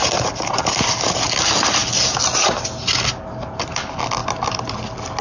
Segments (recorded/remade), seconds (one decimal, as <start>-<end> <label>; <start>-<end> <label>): 0.0-5.2 recorded